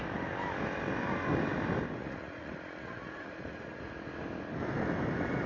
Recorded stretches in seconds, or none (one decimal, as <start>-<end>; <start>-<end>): 0.0-2.0; 3.8-5.5